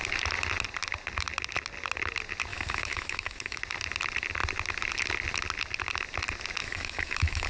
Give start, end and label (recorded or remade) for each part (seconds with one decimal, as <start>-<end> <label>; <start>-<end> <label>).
0.0-2.5 recorded; 2.5-3.6 remade; 3.6-6.6 recorded; 6.6-7.5 remade